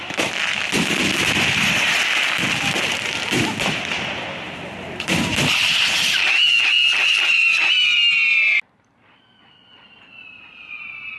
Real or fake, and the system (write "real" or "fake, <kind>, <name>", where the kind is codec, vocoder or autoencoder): real